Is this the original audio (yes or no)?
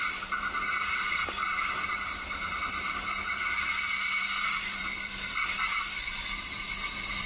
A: no